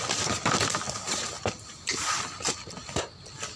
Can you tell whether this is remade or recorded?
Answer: recorded